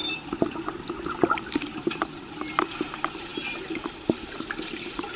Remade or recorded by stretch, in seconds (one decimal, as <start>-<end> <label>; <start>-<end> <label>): 0.0-5.2 remade